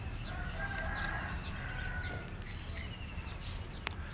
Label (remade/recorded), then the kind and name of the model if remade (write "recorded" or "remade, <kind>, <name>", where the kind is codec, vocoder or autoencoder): recorded